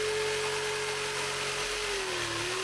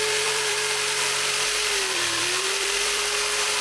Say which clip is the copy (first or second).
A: second